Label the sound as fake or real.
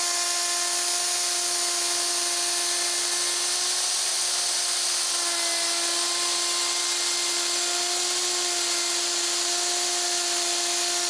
real